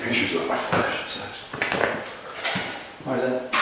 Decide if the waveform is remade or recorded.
recorded